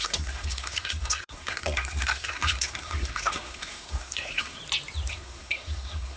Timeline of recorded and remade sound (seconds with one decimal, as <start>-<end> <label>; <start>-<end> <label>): 0.0-4.6 remade; 4.6-5.1 recorded; 5.1-6.2 remade